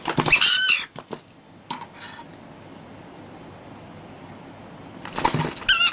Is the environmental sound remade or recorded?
recorded